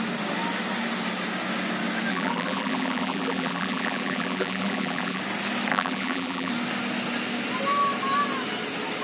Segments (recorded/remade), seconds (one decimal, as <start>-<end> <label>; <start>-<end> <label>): 0.0-2.1 recorded; 2.1-5.2 remade; 5.2-5.7 recorded; 5.7-6.5 remade; 6.5-9.0 recorded